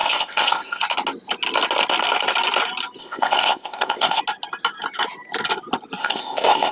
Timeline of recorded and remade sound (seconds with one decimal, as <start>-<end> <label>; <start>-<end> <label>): 0.0-0.8 remade; 0.8-3.0 recorded; 3.0-4.2 remade; 4.2-6.0 recorded; 6.0-6.7 remade